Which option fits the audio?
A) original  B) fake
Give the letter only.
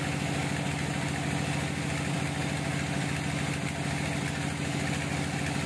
A